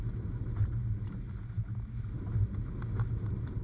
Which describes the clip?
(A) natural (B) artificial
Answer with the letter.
A